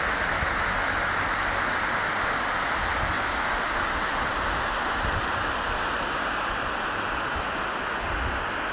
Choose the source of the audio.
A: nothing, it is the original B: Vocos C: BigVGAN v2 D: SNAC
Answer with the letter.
A